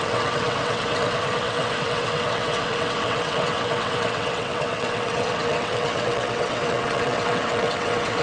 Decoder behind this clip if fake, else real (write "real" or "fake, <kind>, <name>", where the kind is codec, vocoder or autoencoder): fake, vocoder, WaveNeXt